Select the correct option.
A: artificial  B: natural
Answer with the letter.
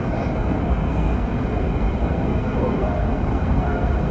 A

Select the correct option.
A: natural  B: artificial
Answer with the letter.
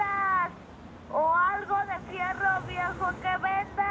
A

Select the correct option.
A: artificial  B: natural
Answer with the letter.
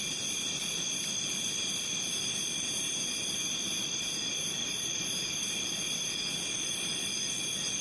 B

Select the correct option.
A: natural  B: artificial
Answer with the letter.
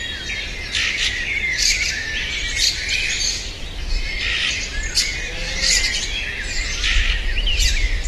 A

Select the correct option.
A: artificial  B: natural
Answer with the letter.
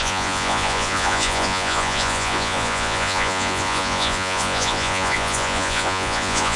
A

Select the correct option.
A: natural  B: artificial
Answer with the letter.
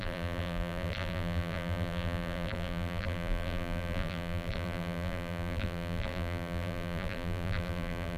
B